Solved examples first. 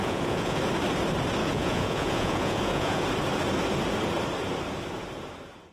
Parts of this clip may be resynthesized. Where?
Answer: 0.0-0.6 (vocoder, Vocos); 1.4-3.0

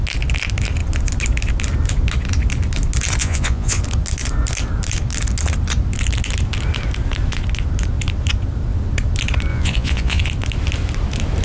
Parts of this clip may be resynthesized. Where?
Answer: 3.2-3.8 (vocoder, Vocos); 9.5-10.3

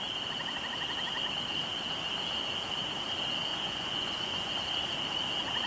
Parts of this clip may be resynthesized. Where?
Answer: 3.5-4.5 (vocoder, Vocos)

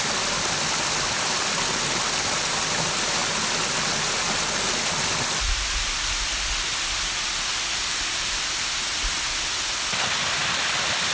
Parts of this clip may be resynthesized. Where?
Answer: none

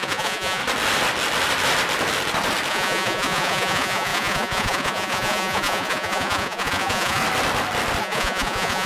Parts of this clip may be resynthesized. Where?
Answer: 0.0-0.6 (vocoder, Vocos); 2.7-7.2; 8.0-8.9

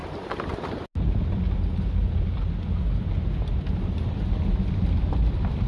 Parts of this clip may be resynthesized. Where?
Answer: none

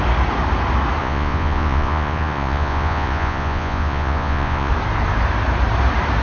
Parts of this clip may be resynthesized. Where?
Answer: 1.0-4.7 (vocoder, Vocos)